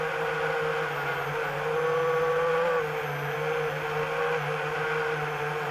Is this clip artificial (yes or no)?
no